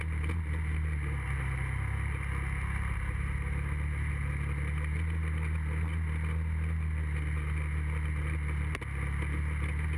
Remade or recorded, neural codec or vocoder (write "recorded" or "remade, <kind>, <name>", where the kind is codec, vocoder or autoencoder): recorded